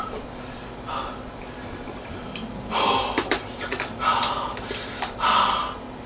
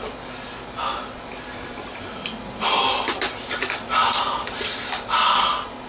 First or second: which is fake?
first